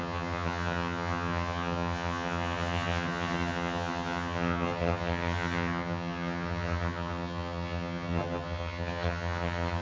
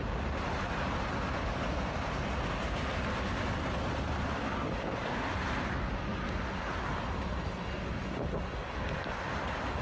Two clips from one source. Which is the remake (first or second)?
first